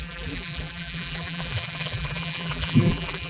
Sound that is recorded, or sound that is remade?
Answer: remade